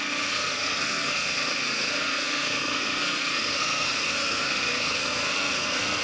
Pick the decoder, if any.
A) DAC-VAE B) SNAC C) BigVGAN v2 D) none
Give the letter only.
B